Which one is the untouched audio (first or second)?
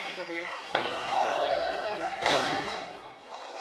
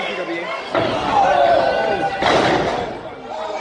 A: second